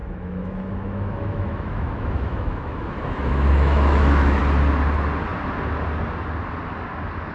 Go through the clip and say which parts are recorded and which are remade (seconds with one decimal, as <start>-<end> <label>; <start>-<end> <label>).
0.0-4.4 remade; 4.4-7.3 recorded